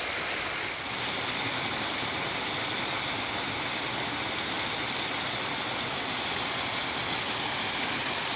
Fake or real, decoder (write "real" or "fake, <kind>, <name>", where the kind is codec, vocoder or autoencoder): real